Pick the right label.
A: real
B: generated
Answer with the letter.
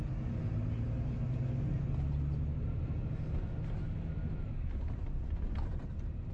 A